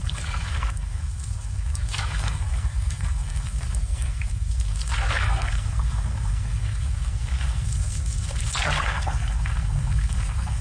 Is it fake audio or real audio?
fake